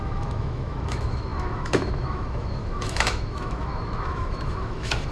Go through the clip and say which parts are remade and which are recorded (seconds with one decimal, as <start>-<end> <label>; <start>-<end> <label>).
0.0-5.1 remade